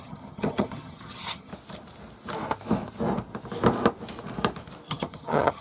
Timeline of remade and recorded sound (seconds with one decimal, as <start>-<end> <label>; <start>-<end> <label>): 0.0-1.5 remade; 1.5-4.9 recorded; 4.9-5.6 remade